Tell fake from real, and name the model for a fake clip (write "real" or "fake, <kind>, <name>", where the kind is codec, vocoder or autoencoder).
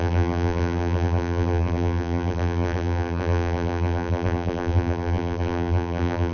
fake, vocoder, BigVGAN v2